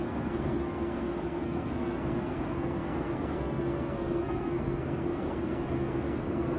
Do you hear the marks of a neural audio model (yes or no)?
yes